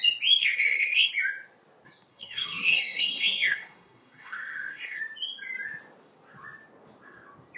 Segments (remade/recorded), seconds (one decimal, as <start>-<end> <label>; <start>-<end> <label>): 0.0-0.4 recorded; 0.4-1.1 remade; 1.1-2.1 recorded; 2.1-5.0 remade; 5.0-7.6 recorded